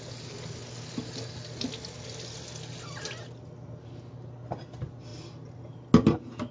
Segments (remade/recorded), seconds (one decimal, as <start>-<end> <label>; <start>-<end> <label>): 0.0-6.5 recorded